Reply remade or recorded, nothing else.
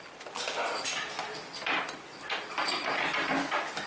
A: recorded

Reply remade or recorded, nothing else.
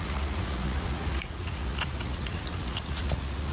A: remade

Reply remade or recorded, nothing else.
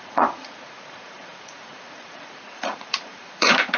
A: remade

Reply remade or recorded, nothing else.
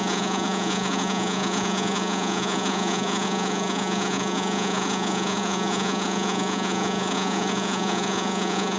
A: remade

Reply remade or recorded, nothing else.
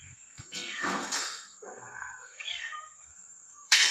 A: remade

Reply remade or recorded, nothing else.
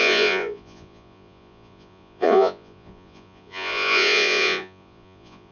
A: remade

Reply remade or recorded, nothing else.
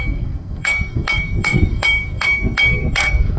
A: remade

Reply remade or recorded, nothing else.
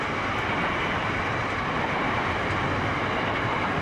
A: recorded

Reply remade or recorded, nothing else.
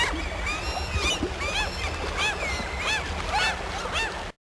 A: recorded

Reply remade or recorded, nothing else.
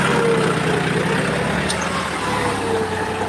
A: recorded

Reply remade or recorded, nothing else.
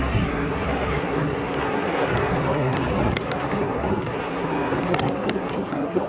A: remade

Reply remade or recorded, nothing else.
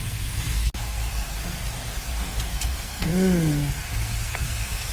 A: remade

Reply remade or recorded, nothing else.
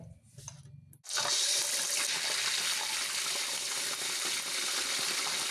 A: recorded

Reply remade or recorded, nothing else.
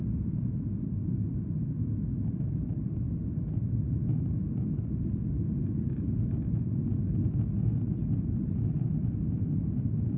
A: recorded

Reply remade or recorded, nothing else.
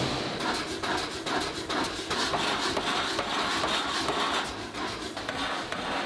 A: recorded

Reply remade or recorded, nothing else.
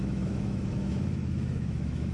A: remade